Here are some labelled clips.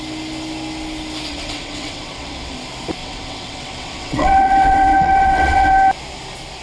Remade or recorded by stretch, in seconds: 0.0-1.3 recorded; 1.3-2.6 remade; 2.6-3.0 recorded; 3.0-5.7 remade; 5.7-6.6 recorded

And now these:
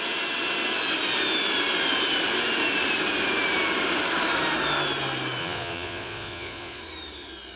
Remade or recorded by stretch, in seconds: 0.0-5.4 recorded; 5.4-6.8 remade; 6.8-7.6 recorded

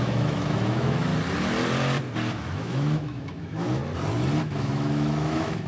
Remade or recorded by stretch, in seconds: 0.0-1.1 remade; 1.1-2.3 recorded; 2.3-3.8 remade; 3.8-4.4 recorded; 4.4-5.7 remade

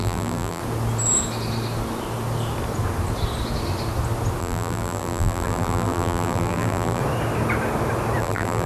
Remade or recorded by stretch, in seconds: 0.0-0.6 remade; 0.6-4.4 recorded; 4.4-7.0 remade; 7.0-8.2 recorded; 8.2-8.7 remade

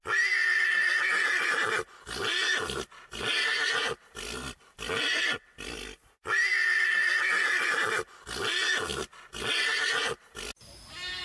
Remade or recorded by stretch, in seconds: 0.0-11.2 recorded

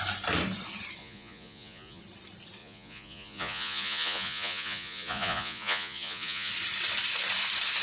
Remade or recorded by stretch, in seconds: 0.0-1.0 recorded; 1.0-2.0 remade; 2.0-2.6 recorded; 2.6-6.5 remade; 6.5-7.8 recorded

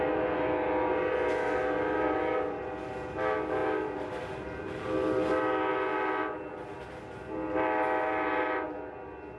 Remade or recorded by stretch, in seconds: 0.0-9.4 recorded

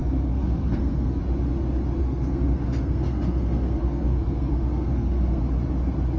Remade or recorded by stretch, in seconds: 0.0-1.2 remade; 1.2-2.0 recorded; 2.0-5.4 remade; 5.4-6.2 recorded